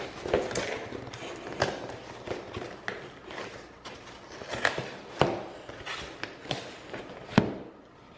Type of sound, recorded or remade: recorded